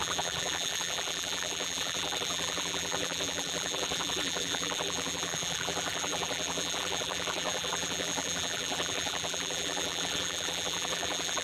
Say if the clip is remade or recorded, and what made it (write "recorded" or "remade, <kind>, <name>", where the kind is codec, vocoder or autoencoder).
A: remade, vocoder, BigVGAN v2